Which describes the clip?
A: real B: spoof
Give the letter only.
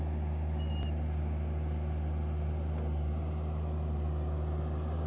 A